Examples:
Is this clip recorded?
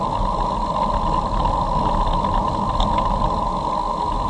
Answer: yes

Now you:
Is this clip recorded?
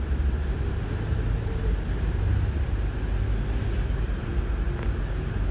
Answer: yes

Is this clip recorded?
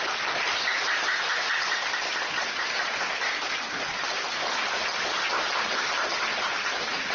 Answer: yes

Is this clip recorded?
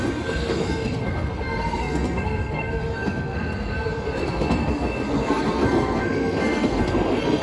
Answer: no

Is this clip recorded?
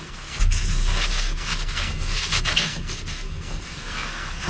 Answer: no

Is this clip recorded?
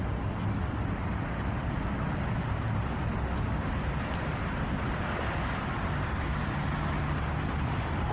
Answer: yes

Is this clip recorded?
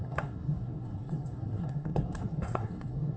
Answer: no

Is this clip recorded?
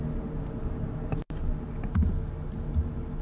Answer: yes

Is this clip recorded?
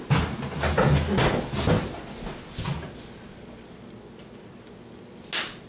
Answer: yes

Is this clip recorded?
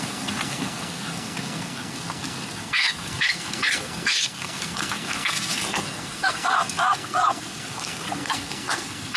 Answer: no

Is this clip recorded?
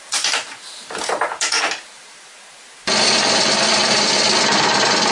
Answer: yes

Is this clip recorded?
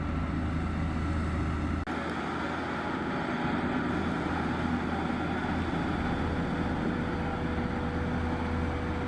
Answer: yes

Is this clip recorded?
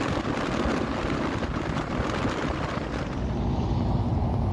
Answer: yes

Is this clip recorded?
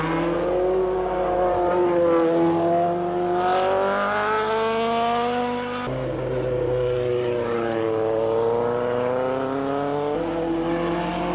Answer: yes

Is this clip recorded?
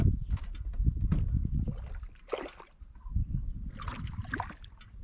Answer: yes